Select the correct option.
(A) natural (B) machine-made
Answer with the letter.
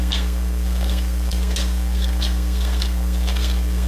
B